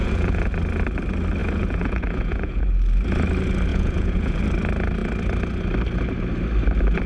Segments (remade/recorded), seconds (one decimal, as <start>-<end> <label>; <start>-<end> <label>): 0.0-0.5 remade; 0.5-1.4 recorded; 1.4-2.6 remade; 2.6-3.7 recorded; 3.7-4.4 remade; 4.4-7.1 recorded